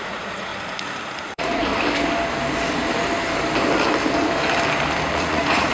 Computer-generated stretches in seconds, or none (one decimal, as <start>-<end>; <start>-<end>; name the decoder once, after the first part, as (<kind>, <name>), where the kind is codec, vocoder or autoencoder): 0.0-0.5 (vocoder, Vocos); 1.2-1.7; 5.1-5.7